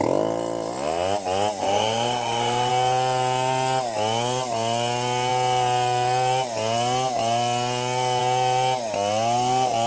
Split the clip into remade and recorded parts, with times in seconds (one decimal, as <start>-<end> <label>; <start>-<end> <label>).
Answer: 0.0-1.6 recorded; 1.6-2.7 remade; 2.7-9.9 recorded